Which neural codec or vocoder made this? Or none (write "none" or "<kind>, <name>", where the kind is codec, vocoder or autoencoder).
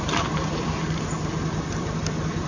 none